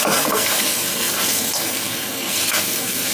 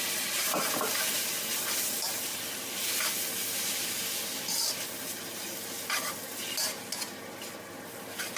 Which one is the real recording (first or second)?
second